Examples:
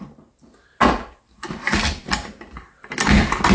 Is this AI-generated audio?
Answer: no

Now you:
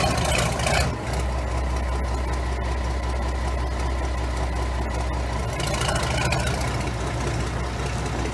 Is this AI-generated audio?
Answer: no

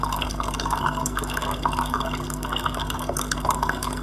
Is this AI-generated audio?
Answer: yes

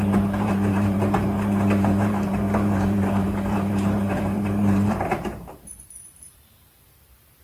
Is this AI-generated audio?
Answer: yes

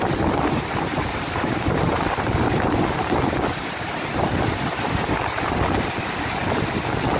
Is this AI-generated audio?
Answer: no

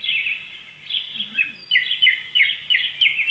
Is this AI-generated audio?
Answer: no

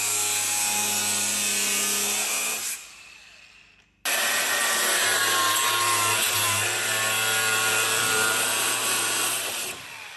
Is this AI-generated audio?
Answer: no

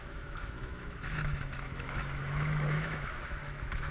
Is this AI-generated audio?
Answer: yes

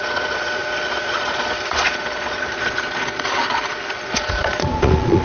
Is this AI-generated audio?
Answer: yes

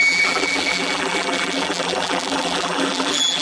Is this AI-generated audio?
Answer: yes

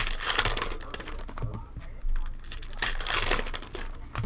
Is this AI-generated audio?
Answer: no